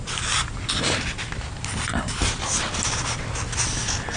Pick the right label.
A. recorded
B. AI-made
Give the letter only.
A